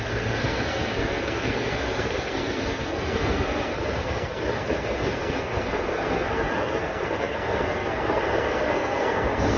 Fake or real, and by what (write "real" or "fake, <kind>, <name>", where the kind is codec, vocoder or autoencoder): fake, codec, SNAC